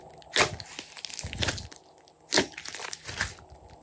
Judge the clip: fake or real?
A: real